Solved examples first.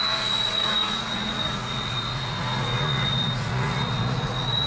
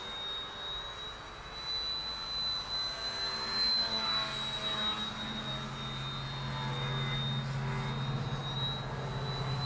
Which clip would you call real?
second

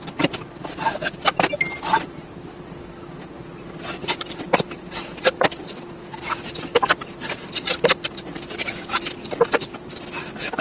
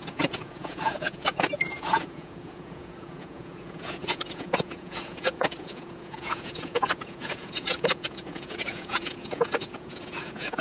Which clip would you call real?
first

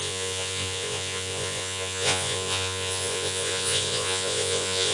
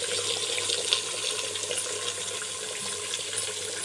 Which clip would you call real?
second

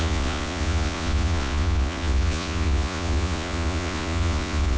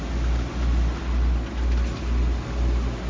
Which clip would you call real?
second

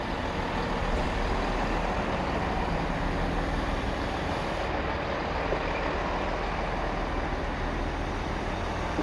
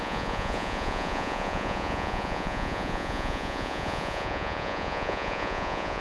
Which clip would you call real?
first